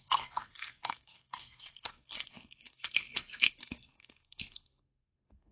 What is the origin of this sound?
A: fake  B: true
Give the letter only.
A